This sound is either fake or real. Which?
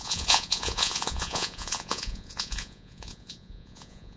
fake